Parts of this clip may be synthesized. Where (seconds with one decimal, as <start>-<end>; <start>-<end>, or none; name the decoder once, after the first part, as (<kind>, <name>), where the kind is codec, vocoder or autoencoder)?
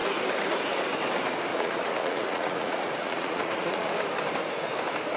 1.5-3.9 (vocoder, Vocos)